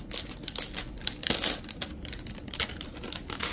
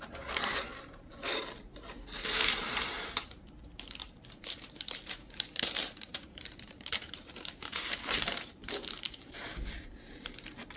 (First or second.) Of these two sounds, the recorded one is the first